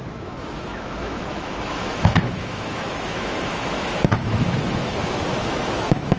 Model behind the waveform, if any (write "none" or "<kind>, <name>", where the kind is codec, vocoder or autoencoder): autoencoder, DAC-VAE